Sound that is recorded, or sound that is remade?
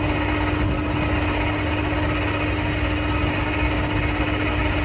recorded